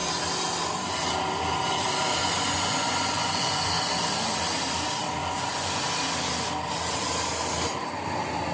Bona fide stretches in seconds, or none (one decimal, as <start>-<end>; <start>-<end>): 0.0-2.2; 3.7-5.2; 5.8-8.5